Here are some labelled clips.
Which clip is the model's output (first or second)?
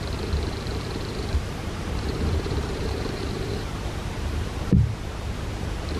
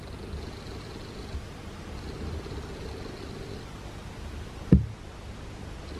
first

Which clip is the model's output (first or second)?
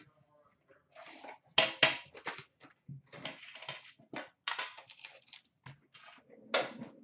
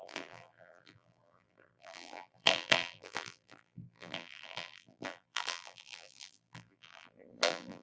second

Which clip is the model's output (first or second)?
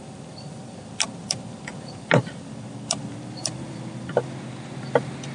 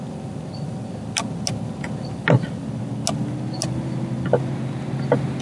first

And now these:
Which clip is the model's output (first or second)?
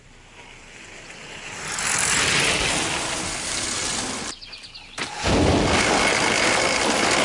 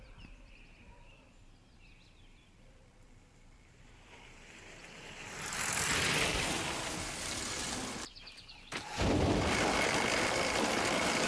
second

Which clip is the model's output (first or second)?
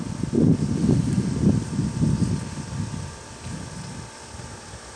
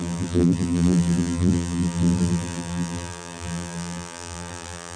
second